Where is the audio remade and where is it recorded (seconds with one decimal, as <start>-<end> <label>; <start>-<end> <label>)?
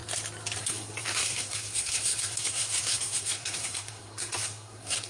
0.0-0.6 recorded; 0.6-5.1 remade